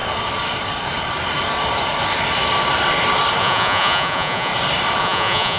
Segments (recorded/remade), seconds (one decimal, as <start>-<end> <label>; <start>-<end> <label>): 0.0-3.4 recorded; 3.4-4.5 remade; 4.5-5.0 recorded; 5.0-5.6 remade